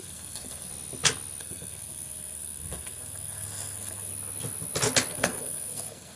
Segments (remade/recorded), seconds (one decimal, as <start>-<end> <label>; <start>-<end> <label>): 0.0-0.7 remade; 0.7-1.4 recorded; 1.4-4.1 remade; 4.1-5.1 recorded; 5.1-6.2 remade